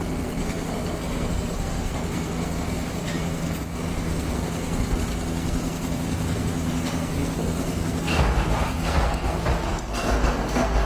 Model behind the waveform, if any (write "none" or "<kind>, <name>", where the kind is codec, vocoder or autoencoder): codec, SNAC